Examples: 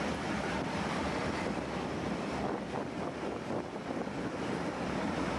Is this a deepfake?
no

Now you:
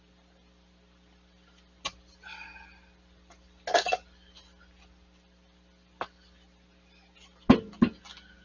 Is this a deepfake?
no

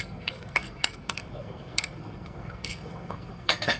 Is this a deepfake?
yes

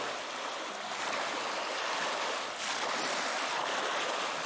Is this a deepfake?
no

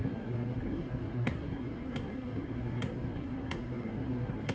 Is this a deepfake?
yes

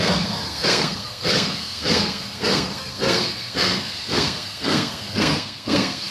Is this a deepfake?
yes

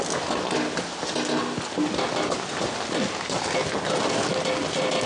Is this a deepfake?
no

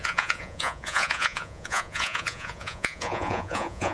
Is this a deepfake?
yes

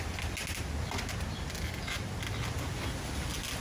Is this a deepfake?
no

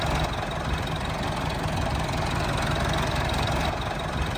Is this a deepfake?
no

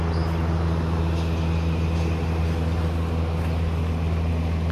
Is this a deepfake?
no